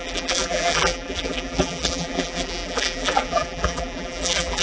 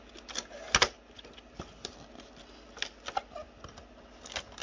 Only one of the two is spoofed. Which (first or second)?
first